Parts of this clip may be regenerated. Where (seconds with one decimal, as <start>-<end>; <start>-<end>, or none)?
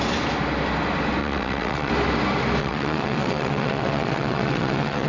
1.2-1.9; 2.6-5.1